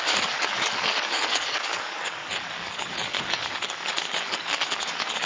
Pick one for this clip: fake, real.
fake